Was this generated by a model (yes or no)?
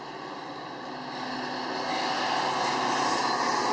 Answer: no